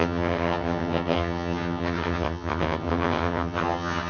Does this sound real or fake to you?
fake